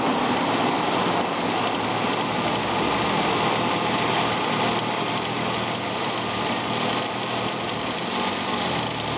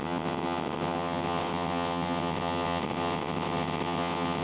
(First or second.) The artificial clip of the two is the second